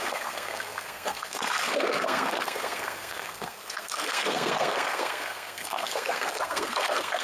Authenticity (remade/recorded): remade